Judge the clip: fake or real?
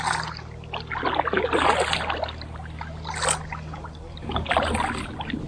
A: real